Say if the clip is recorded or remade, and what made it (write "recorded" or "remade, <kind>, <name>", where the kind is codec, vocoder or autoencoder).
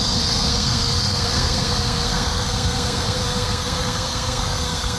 remade, codec, SNAC